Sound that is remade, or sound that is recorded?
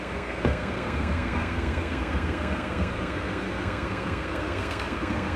remade